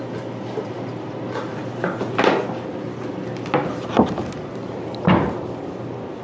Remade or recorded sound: recorded